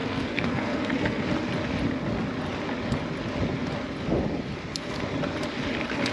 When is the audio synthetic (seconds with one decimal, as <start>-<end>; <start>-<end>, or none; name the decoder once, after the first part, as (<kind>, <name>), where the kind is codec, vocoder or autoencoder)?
0.0-1.3 (codec, SNAC)

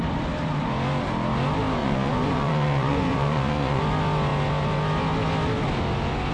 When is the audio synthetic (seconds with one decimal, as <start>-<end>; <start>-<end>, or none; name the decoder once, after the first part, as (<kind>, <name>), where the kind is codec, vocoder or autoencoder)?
1.8-3.8 (vocoder, Vocos)